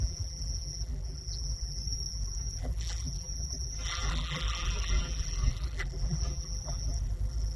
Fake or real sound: fake